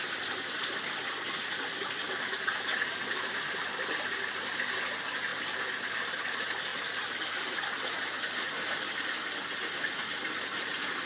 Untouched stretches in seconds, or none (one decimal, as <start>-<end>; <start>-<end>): 4.5-6.7; 7.2-11.1